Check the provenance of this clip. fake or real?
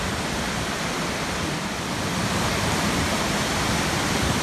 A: fake